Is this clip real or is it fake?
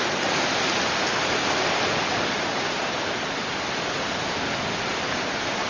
real